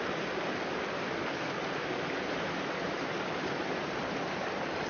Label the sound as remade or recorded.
recorded